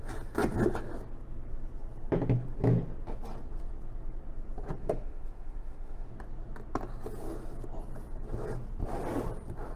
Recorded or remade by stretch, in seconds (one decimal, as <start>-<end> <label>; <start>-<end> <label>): 0.0-4.8 recorded; 4.8-6.1 remade; 6.1-9.8 recorded